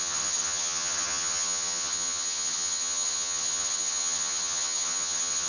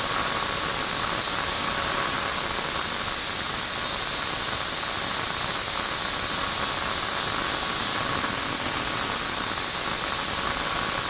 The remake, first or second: first